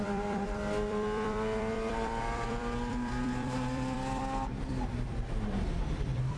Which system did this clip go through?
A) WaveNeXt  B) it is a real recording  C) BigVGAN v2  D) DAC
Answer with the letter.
C